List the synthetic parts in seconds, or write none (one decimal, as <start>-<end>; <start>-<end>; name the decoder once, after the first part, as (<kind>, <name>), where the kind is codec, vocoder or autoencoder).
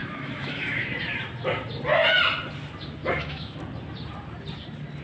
0.0-0.9 (autoencoder, DAC-VAE); 3.0-3.6